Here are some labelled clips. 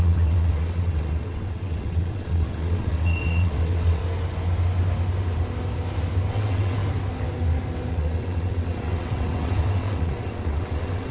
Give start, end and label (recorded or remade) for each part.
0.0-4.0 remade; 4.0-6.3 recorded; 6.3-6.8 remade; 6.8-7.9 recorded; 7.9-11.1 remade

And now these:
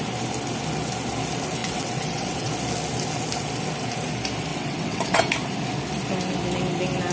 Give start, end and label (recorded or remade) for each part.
0.0-1.6 recorded; 1.6-2.5 remade; 2.5-4.5 recorded; 4.5-5.2 remade; 5.2-7.1 recorded

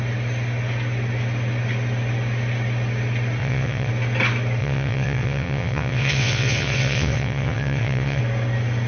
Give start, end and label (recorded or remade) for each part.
0.0-3.4 recorded; 3.4-3.9 remade; 3.9-4.6 recorded; 4.6-8.2 remade; 8.2-8.9 recorded

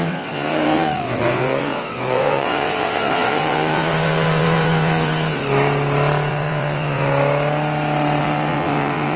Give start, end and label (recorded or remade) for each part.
0.0-5.4 remade; 5.4-6.3 recorded; 6.3-7.1 remade; 7.1-8.2 recorded; 8.2-9.2 remade

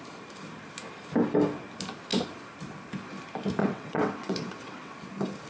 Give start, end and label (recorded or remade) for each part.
0.0-3.6 recorded; 3.6-5.0 remade; 5.0-5.5 recorded

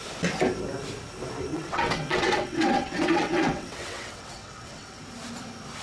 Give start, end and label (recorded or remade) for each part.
0.0-1.5 recorded; 1.5-5.0 remade; 5.0-5.8 recorded

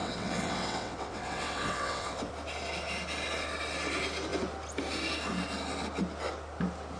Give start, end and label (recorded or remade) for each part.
0.0-2.3 remade; 2.3-7.0 recorded

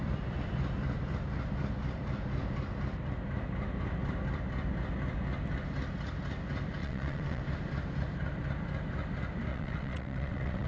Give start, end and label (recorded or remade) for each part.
0.0-6.8 recorded; 6.8-7.4 remade; 7.4-9.5 recorded; 9.5-10.7 remade